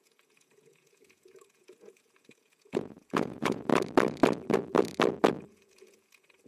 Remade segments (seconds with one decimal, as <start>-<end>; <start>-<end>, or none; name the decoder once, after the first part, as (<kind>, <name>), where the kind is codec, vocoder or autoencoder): 0.0-3.7 (vocoder, Vocos); 5.5-6.5